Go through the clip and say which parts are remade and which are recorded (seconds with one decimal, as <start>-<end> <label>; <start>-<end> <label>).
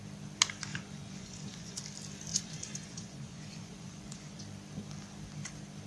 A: 0.0-0.7 recorded; 0.7-1.8 remade; 1.8-2.3 recorded; 2.3-4.4 remade; 4.4-5.9 recorded